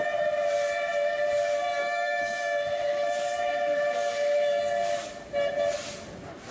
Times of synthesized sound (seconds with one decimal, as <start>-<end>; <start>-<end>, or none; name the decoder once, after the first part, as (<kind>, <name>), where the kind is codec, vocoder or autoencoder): 1.8-4.6 (autoencoder, DAC-VAE)